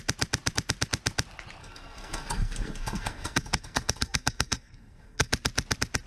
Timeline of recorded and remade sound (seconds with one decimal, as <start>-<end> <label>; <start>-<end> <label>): 0.0-1.6 recorded; 1.6-5.3 remade; 5.3-6.1 recorded